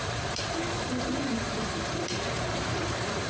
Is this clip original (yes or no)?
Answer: no